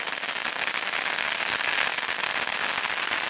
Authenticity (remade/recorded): recorded